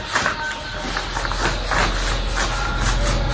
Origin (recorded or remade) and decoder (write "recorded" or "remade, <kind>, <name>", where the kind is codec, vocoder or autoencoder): recorded